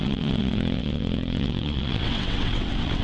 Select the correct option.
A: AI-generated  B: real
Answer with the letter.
A